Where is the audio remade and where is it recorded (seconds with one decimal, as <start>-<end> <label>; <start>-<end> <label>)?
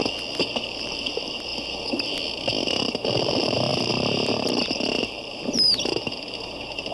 0.0-0.6 recorded; 0.6-1.5 remade; 1.5-2.8 recorded; 2.8-6.9 remade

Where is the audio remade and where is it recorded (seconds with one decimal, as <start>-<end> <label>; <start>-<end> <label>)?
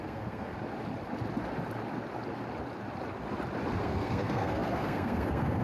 0.0-0.5 remade; 0.5-3.8 recorded; 3.8-5.6 remade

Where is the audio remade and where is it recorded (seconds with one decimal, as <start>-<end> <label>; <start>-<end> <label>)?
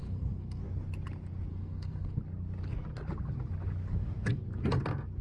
0.0-0.6 remade; 0.6-1.5 recorded; 1.5-2.2 remade; 2.2-5.2 recorded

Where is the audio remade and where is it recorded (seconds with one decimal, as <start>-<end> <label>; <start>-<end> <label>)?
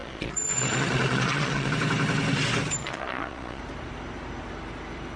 0.0-1.7 remade; 1.7-2.8 recorded; 2.8-3.6 remade; 3.6-5.2 recorded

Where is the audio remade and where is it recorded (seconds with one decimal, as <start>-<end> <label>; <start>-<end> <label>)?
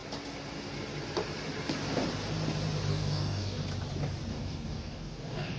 0.0-2.9 recorded; 2.9-3.6 remade; 3.6-4.3 recorded; 4.3-5.6 remade